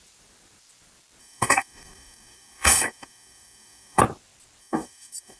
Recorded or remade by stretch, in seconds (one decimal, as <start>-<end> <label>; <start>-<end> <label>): 0.0-1.2 recorded; 1.2-4.0 remade; 4.0-4.6 recorded; 4.6-5.4 remade